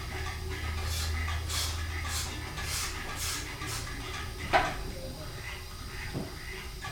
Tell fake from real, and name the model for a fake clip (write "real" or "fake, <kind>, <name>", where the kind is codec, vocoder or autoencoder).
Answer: real